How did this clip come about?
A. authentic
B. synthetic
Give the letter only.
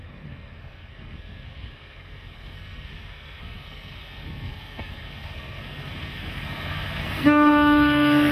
B